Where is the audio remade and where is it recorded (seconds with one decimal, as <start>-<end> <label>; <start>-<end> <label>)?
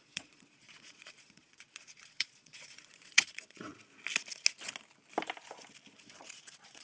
0.0-3.7 remade; 3.7-6.0 recorded; 6.0-6.8 remade